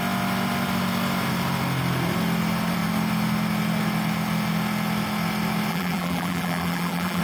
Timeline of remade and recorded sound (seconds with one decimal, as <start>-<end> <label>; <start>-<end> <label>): 0.0-5.7 recorded; 5.7-7.2 remade